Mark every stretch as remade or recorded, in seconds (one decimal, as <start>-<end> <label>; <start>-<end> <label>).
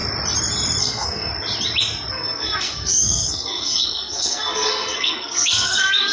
0.0-0.8 recorded; 0.8-1.3 remade; 1.3-2.1 recorded; 2.1-6.1 remade